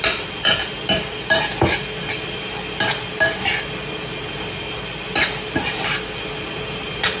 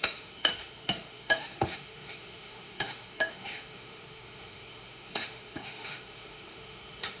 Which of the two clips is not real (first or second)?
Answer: second